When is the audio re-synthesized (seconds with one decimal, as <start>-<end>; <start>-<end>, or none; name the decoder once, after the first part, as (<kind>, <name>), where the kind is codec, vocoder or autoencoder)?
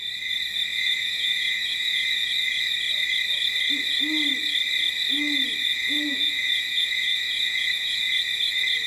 0.7-2.3 (vocoder, Vocos); 5.7-8.1